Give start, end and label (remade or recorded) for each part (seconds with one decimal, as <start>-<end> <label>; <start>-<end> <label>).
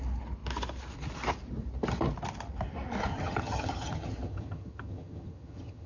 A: 0.0-3.1 recorded; 3.1-5.9 remade